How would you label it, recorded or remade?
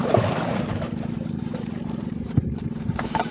remade